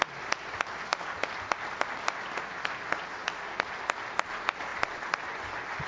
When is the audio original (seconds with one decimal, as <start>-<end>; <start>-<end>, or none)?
0.0-5.9